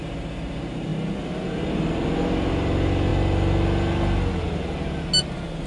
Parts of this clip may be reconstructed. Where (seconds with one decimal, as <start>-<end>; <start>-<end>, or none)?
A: none